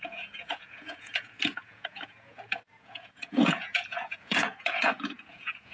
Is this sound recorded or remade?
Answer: remade